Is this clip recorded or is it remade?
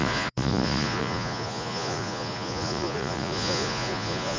remade